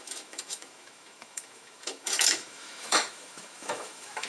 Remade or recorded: remade